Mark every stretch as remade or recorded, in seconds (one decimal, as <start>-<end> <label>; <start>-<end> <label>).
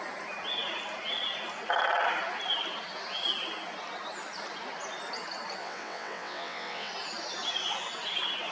0.0-5.6 recorded; 5.6-6.9 remade; 6.9-8.5 recorded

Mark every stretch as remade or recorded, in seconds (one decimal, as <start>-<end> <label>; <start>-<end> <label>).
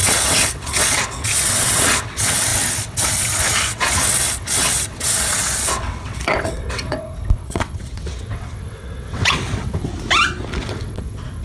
0.0-9.9 remade; 9.9-10.6 recorded; 10.6-11.4 remade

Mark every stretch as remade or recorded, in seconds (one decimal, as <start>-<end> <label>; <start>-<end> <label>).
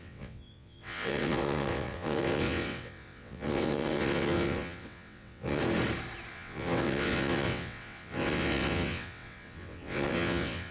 0.0-5.6 remade; 5.6-6.3 recorded; 6.3-10.7 remade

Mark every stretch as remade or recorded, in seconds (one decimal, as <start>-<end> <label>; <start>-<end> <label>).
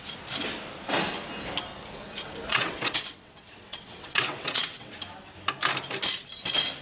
0.0-2.5 recorded; 2.5-4.9 remade; 4.9-6.8 recorded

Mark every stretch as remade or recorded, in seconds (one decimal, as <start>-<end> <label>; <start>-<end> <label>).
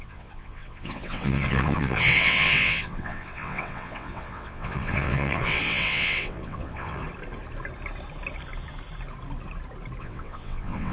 0.0-7.0 remade; 7.0-10.0 recorded; 10.0-10.9 remade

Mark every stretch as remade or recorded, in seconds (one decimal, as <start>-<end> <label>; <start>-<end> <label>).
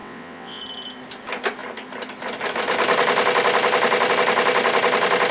0.0-0.6 remade; 0.6-5.3 recorded